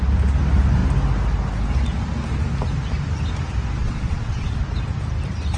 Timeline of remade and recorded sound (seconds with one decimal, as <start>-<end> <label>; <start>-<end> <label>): 0.0-3.8 recorded; 3.8-4.6 remade; 4.6-5.6 recorded